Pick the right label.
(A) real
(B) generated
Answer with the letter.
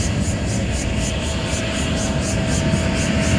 A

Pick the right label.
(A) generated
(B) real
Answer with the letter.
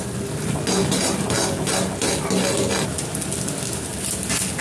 B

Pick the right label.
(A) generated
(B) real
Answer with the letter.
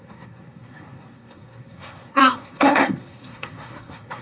A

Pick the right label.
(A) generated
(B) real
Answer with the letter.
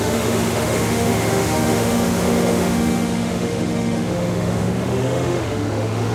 A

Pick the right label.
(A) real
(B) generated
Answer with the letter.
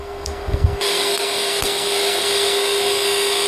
B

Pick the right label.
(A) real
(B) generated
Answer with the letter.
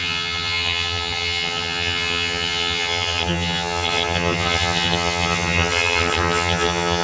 B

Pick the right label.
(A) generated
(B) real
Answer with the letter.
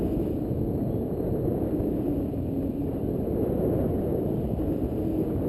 B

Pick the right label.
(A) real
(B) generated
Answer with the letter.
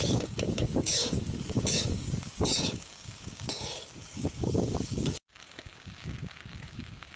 B